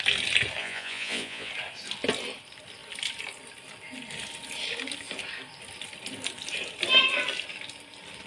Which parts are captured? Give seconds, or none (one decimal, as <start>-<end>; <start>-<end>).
0.0-0.6; 1.5-8.3